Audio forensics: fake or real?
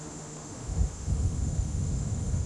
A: fake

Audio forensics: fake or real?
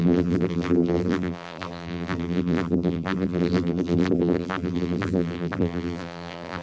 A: fake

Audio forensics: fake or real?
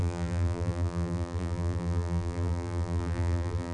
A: fake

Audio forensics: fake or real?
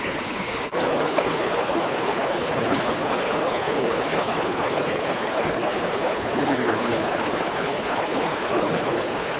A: fake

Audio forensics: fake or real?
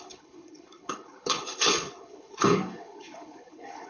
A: fake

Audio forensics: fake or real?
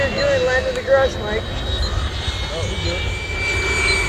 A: real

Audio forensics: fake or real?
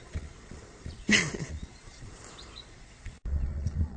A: fake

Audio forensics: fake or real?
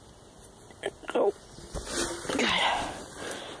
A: real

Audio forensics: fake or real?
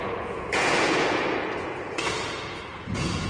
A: fake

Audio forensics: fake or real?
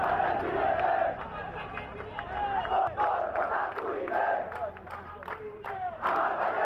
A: real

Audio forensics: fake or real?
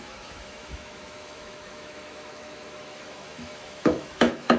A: fake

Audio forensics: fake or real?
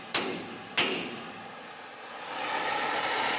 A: real